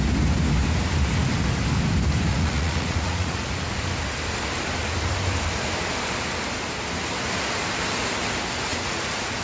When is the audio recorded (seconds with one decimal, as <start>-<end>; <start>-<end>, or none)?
0.0-2.3; 3.7-8.7